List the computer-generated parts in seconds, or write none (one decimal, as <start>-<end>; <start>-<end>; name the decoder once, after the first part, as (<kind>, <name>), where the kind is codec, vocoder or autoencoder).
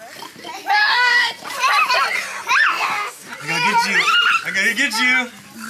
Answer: 0.8-1.3 (codec, DAC); 2.7-3.3